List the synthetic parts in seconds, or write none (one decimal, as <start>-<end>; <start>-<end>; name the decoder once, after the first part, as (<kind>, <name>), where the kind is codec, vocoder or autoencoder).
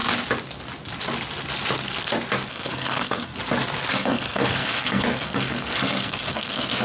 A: 2.5-3.3 (codec, SNAC); 3.9-6.8